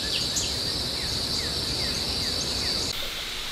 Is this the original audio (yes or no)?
yes